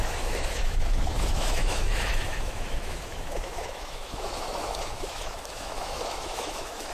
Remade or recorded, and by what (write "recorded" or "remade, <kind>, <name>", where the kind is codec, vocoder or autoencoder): remade, autoencoder, DAC-VAE